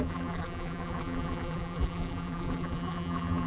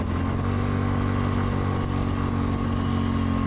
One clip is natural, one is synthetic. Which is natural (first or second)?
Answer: second